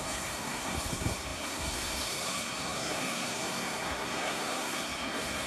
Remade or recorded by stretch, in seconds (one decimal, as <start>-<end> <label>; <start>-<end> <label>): 0.0-5.5 remade